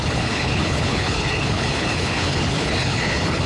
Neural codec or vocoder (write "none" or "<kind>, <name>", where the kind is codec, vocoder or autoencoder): codec, HILCodec